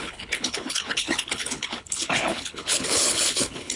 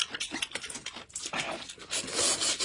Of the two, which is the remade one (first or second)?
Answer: first